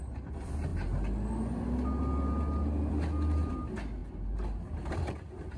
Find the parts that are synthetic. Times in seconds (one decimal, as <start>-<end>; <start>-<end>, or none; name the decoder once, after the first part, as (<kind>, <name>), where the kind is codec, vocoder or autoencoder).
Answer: none